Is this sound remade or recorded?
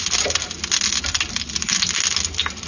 recorded